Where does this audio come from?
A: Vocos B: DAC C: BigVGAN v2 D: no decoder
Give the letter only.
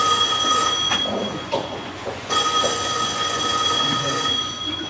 A